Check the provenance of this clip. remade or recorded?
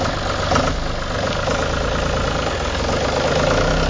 recorded